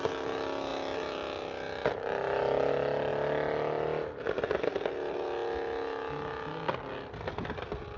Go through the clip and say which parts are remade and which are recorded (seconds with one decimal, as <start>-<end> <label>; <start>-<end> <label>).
0.0-8.0 recorded